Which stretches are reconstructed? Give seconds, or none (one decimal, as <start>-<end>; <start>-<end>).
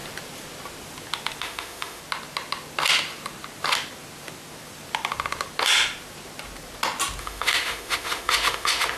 1.4-2.0; 7.2-9.0